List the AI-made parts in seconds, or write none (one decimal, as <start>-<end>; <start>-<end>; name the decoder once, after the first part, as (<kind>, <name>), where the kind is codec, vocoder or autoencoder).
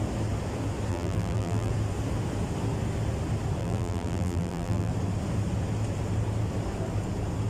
0.9-1.7 (vocoder, BigVGAN v2); 3.6-4.9